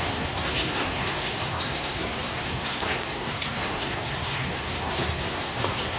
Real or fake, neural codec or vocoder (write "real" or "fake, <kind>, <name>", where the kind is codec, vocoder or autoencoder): fake, codec, SNAC